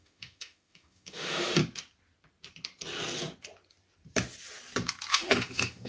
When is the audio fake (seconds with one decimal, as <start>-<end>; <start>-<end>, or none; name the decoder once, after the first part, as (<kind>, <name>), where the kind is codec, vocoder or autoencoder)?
0.0-1.6 (autoencoder, DAC-VAE); 5.1-5.9